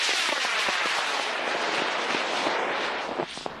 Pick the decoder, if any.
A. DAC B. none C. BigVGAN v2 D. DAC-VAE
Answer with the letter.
B